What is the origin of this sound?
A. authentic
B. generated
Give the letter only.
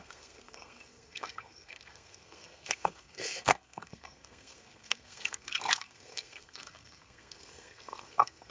B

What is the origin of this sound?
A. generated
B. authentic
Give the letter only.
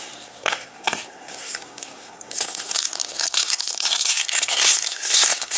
A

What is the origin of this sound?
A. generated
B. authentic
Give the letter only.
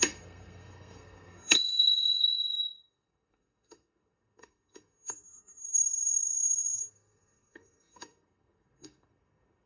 A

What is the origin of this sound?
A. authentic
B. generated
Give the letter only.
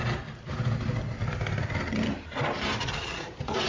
A